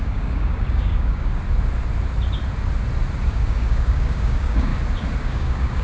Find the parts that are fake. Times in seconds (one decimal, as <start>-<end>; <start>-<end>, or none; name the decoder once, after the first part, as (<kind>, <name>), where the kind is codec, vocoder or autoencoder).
0.0-1.4 (codec, DAC); 3.3-4.7; 5.2-5.8